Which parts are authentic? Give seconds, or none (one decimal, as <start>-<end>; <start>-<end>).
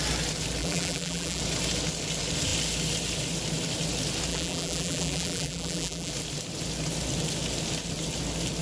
0.0-0.6; 1.4-4.3; 6.1-8.6